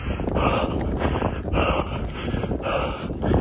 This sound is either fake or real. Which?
real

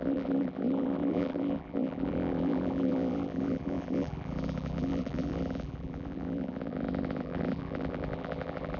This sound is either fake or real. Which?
fake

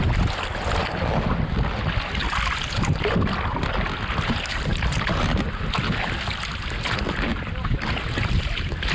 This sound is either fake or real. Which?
real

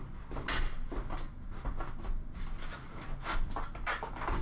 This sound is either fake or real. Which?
real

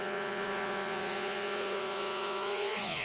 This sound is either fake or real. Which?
fake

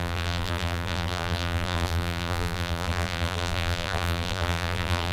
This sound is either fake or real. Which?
fake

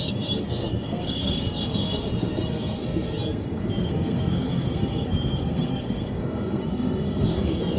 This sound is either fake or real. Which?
fake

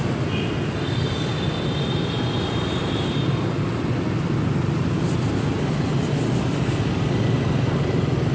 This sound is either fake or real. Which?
real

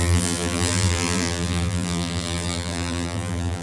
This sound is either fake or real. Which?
fake